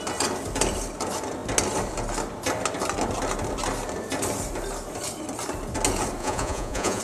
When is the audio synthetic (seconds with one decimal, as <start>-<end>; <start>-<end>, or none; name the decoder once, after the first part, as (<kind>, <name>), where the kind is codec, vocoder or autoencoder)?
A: 6.2-7.0 (vocoder, Vocos)